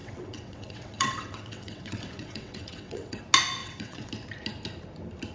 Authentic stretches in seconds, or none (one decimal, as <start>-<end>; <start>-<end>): 3.2-3.6; 4.1-5.3